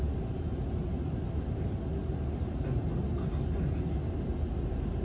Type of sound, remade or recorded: recorded